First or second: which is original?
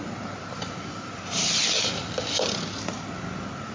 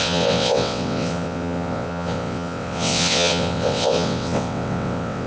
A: first